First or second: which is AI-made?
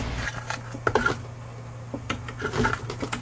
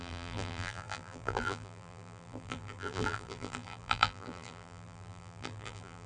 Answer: second